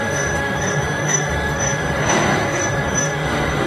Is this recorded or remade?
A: remade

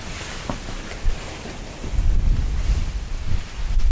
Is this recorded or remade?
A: recorded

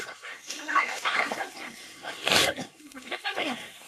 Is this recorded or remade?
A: remade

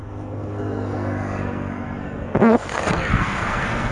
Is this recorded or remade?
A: remade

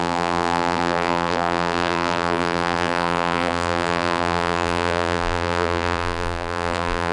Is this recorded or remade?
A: remade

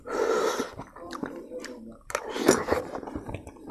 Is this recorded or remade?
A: recorded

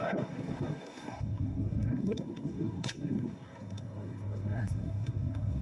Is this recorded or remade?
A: remade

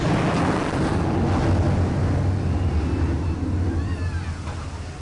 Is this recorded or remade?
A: recorded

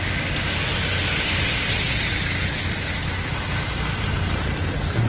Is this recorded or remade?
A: recorded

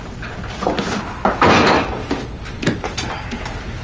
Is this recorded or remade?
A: recorded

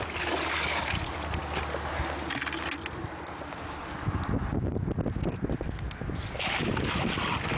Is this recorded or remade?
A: recorded